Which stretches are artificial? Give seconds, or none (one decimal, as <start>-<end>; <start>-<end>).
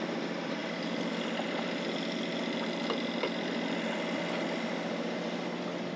none